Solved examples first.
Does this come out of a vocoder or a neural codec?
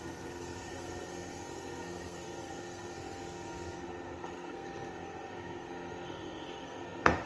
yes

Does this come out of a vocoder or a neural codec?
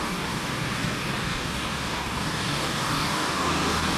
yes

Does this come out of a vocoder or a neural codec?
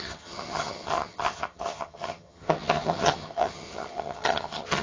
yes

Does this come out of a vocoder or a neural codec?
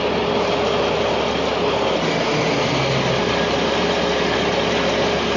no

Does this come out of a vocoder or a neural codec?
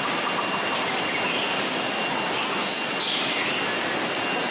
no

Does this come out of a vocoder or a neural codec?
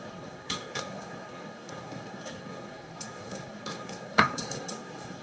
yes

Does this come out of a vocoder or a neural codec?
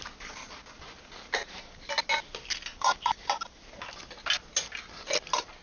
no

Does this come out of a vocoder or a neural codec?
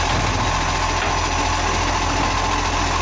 no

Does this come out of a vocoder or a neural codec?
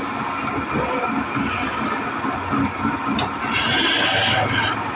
no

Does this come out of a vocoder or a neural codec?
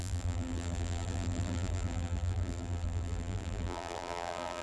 yes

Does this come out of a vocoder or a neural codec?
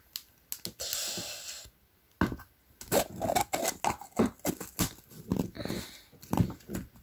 no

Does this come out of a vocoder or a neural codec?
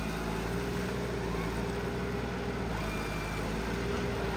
no